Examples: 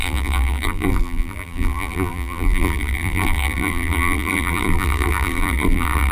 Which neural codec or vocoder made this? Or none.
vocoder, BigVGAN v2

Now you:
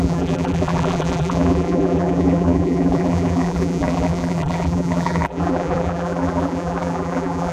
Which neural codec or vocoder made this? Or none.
vocoder, BigVGAN v2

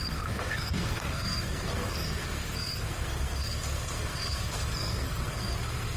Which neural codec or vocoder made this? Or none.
codec, SNAC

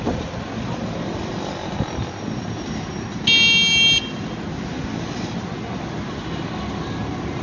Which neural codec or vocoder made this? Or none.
none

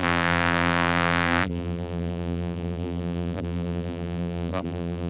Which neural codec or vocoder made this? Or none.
vocoder, BigVGAN v2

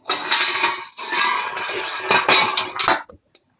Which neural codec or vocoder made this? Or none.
none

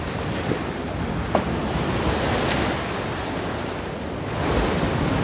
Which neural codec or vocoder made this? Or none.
none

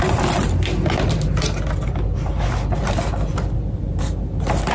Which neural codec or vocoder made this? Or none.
none